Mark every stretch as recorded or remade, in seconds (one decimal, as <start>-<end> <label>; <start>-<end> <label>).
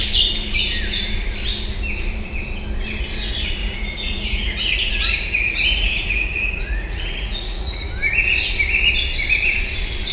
0.0-3.6 recorded; 3.6-7.9 remade; 7.9-10.1 recorded